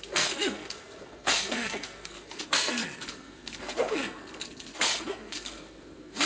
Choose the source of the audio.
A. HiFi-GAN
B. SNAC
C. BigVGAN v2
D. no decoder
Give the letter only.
B